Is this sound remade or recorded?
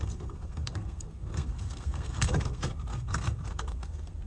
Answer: remade